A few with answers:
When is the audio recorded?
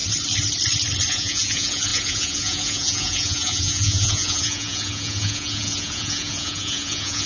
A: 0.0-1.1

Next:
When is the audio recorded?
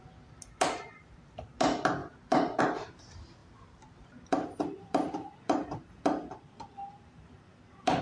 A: 0.0-2.0; 2.6-3.4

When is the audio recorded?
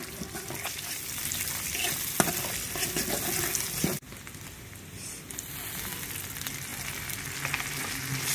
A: 0.0-8.3